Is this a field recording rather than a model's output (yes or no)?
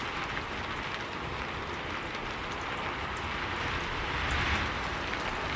yes